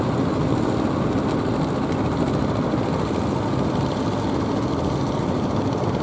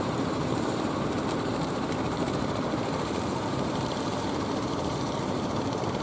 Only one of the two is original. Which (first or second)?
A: first